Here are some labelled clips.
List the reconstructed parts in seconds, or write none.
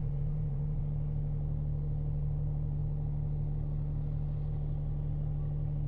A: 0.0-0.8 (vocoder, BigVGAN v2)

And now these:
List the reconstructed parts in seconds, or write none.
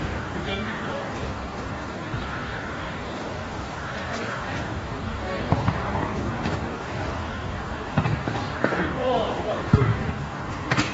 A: 0.0-10.9 (codec, DAC)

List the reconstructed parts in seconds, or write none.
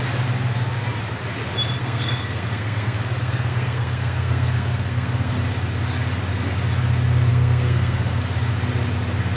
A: 1.8-5.3 (codec, SNAC); 7.3-8.1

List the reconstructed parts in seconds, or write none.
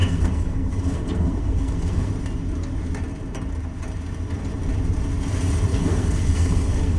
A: 0.0-2.1 (codec, SNAC); 5.7-7.0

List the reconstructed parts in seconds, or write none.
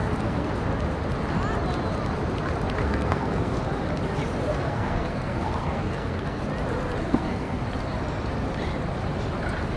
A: 0.0-0.5 (codec, SNAC); 2.8-3.6; 4.5-6.4; 7.0-7.6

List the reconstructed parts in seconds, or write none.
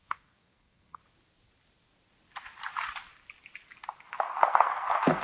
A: 0.0-1.0 (codec, SNAC); 4.1-5.2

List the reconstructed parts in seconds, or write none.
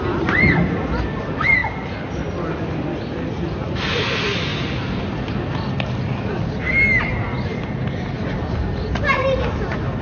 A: none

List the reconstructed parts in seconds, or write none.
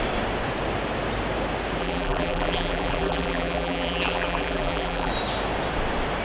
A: 1.8-5.1 (vocoder, BigVGAN v2)